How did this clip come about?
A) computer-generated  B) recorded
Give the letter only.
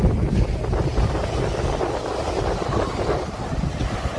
B